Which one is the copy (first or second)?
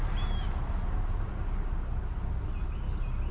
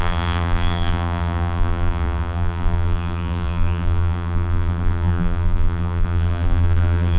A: second